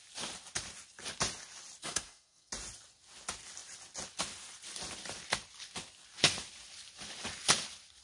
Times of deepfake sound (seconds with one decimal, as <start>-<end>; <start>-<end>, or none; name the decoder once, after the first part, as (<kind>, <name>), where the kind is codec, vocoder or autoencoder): 1.8-2.5 (codec, SNAC)